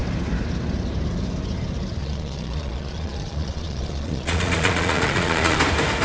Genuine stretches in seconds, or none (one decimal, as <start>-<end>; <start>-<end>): 0.0-2.0; 5.6-6.0